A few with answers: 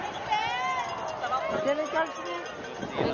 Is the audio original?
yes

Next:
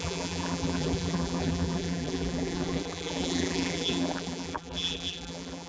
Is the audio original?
no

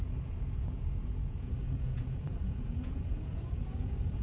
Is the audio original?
no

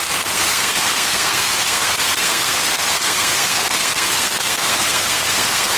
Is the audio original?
no